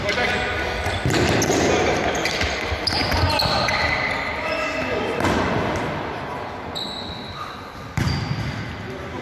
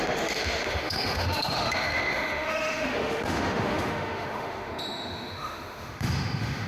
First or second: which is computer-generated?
second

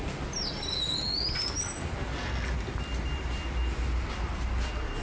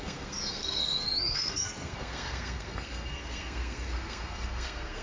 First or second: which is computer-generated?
second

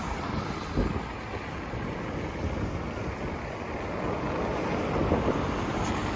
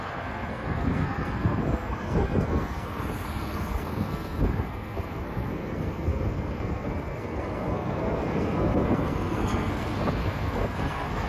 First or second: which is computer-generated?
second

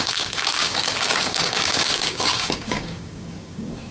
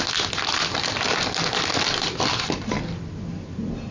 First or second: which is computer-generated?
first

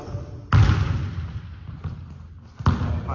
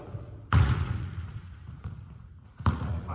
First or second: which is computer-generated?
second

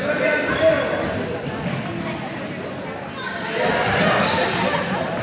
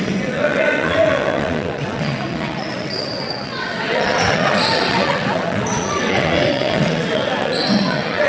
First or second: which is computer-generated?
second